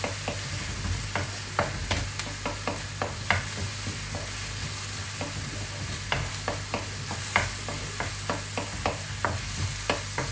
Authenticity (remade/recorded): recorded